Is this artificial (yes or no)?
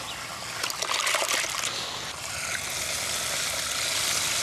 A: no